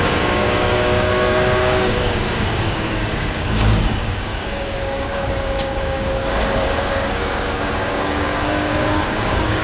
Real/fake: fake